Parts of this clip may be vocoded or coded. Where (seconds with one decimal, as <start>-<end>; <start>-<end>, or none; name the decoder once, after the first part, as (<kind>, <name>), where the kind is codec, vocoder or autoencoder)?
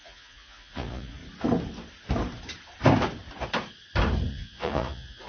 0.0-1.2 (vocoder, Vocos); 4.3-5.3